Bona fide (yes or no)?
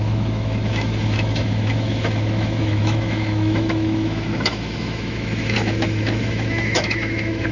no